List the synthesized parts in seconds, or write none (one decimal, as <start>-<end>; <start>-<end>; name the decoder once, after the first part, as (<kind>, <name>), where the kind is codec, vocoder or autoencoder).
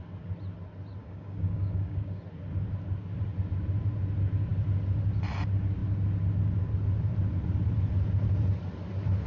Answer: 1.0-2.2 (codec, DAC)